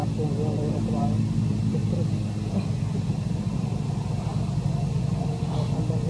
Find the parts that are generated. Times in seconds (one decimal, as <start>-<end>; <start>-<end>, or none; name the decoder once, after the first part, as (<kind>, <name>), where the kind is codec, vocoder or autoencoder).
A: 0.7-1.8 (vocoder, BigVGAN v2); 3.1-4.3